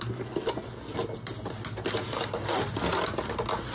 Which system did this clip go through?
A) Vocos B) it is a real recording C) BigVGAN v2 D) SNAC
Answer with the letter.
B